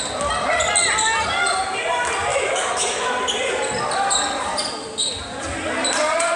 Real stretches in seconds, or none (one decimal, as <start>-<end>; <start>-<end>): 0.0-2.3; 3.1-6.4